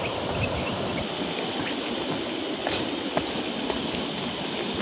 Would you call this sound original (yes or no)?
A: yes